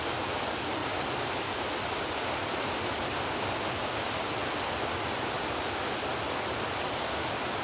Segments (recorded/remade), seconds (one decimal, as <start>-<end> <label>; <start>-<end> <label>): 0.0-7.6 recorded